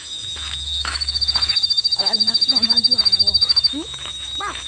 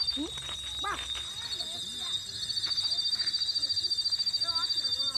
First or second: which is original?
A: second